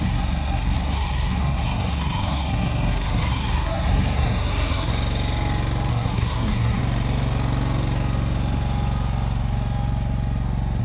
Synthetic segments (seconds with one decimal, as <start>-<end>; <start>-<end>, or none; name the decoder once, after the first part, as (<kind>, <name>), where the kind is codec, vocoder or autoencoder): 0.0-4.9 (codec, SNAC); 5.9-6.8